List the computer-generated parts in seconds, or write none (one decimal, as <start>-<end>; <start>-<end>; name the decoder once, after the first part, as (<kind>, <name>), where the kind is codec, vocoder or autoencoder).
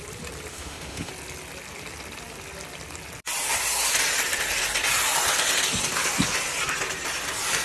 0.5-1.1 (autoencoder, DAC-VAE)